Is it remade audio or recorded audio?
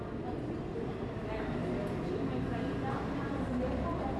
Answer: recorded